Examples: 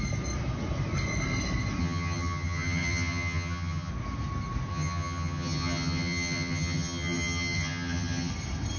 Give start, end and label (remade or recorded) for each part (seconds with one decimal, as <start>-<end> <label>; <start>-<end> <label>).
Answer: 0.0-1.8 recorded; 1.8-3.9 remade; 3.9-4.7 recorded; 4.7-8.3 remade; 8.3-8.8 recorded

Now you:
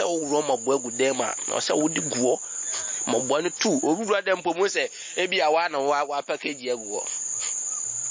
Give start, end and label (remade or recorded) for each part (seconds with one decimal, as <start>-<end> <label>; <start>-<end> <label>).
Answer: 0.0-8.1 recorded

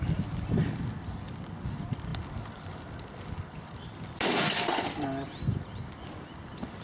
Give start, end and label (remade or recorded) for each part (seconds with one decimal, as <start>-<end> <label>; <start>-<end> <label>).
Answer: 0.0-6.8 recorded